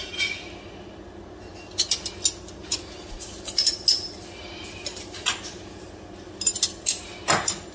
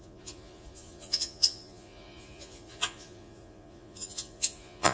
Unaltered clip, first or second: first